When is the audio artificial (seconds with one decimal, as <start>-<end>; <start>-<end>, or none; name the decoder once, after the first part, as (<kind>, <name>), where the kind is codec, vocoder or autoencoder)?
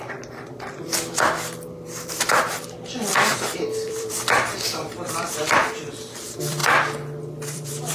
0.0-6.6 (vocoder, BigVGAN v2); 7.2-7.9